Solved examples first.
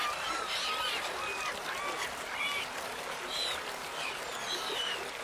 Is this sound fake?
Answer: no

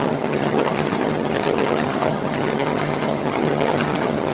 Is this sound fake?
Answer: yes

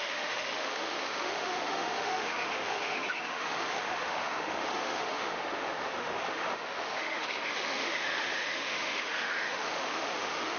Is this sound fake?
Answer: yes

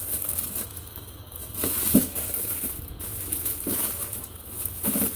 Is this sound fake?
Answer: yes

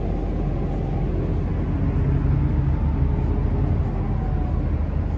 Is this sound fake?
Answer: no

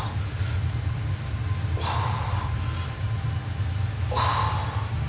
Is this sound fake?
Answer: no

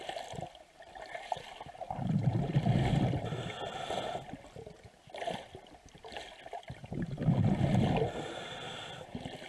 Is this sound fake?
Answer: no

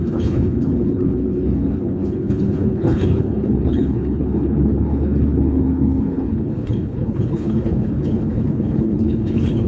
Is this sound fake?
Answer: yes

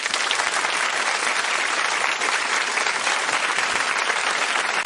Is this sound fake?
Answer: no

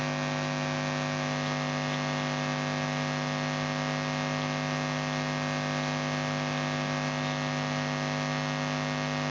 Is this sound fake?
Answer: no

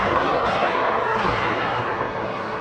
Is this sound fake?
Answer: yes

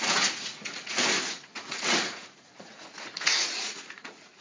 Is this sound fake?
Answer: yes